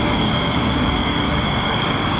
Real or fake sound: fake